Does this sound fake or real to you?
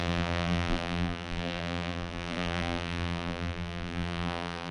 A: fake